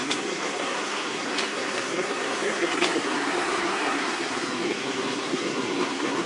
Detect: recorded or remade remade